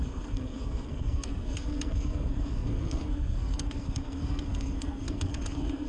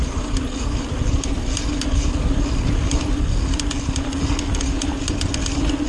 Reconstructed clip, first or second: first